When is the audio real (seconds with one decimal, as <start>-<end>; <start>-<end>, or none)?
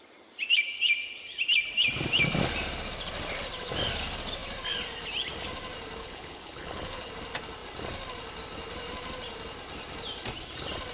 0.0-6.0; 7.1-10.9